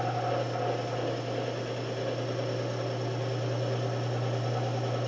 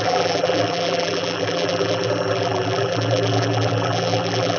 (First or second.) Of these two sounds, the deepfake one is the second